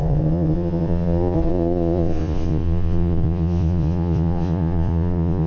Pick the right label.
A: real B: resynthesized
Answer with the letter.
B